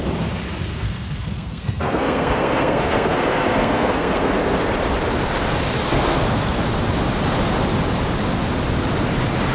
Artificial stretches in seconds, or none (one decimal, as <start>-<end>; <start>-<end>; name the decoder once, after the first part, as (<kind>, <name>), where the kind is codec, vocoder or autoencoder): 0.7-4.7 (codec, SNAC); 5.8-6.6